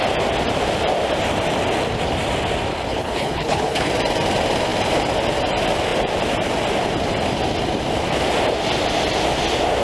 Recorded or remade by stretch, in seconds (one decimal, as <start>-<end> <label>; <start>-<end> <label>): 0.0-2.9 recorded; 2.9-3.9 remade; 3.9-9.8 recorded